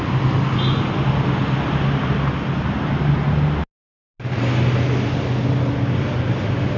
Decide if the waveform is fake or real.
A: real